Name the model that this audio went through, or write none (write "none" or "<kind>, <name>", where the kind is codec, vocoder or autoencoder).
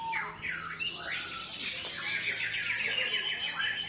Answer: none